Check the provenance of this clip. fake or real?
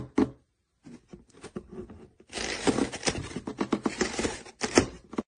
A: real